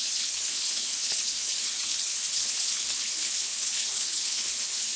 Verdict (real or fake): fake